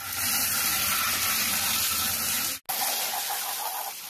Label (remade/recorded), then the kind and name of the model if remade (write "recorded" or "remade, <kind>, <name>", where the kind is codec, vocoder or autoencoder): recorded